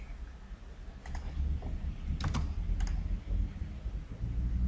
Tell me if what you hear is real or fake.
real